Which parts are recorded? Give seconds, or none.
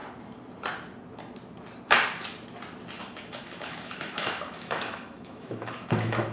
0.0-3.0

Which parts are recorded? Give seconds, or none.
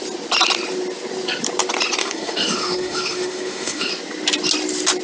0.0-2.0; 3.9-5.0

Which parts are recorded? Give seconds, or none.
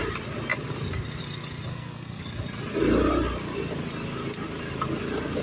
0.0-1.7; 2.2-5.4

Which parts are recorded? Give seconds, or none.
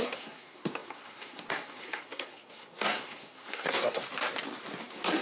4.0-4.8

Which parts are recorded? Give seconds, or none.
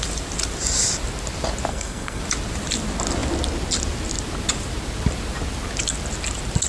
0.0-1.7; 2.2-6.7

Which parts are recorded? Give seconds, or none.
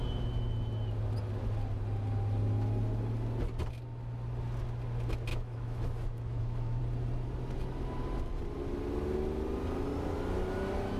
0.0-5.3; 6.8-11.0